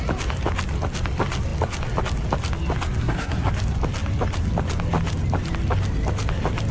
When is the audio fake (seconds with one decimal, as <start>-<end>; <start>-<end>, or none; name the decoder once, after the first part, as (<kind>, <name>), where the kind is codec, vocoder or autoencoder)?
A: 3.0-3.5 (codec, SNAC)